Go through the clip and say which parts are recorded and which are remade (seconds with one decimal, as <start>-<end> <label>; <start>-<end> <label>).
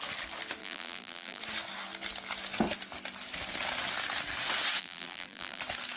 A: 0.0-0.6 recorded; 0.6-1.4 remade; 1.4-4.8 recorded; 4.8-5.6 remade; 5.6-6.0 recorded